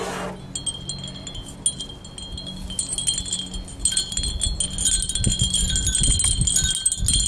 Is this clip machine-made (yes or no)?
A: no